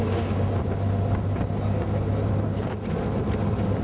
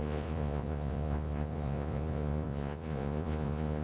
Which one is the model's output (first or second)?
second